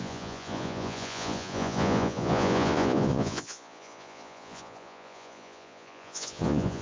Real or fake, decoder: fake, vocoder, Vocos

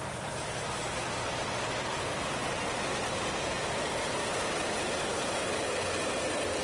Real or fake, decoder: real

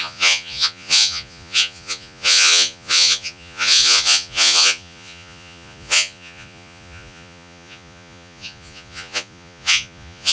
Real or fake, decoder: fake, vocoder, Vocos